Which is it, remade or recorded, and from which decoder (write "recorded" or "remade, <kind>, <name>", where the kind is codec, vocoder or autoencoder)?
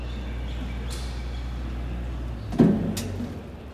recorded